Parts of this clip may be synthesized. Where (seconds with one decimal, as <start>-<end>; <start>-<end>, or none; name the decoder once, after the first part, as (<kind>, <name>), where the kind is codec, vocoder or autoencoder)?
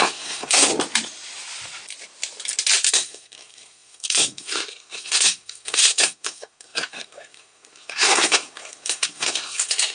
0.0-0.7 (codec, SNAC); 2.9-9.9